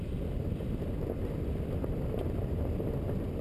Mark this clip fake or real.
real